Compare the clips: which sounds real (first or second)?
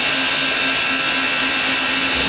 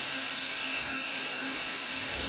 first